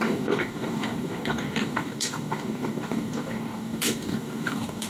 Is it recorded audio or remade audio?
remade